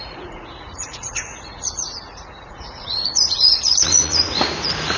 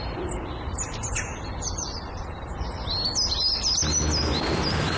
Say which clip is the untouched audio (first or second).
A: second